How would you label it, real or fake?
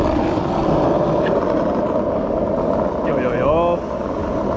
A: real